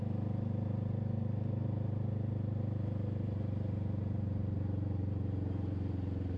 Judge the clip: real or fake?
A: real